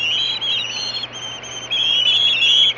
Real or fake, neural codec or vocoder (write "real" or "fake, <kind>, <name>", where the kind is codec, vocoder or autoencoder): real